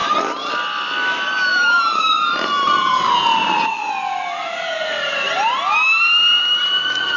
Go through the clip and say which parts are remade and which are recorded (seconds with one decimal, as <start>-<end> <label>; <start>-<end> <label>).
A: 0.0-0.5 remade; 0.5-1.5 recorded; 1.5-3.0 remade; 3.0-3.4 recorded; 3.4-3.9 remade; 3.9-4.9 recorded; 4.9-5.6 remade; 5.6-7.2 recorded